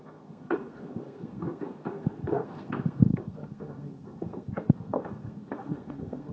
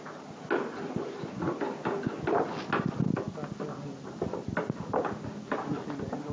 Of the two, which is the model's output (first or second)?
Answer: first